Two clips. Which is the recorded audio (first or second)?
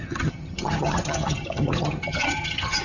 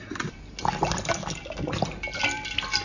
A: second